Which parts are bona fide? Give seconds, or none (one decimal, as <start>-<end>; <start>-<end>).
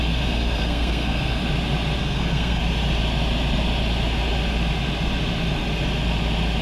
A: 1.4-2.0; 2.6-6.6